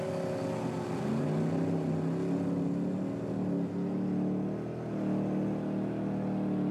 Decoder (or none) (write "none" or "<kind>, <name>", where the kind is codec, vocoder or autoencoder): none